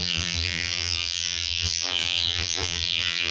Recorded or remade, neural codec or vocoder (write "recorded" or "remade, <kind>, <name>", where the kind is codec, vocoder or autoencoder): remade, vocoder, BigVGAN v2